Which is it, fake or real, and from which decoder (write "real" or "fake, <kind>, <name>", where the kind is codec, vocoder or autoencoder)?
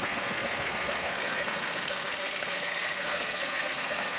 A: fake, codec, SNAC